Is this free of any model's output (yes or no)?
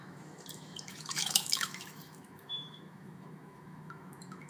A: no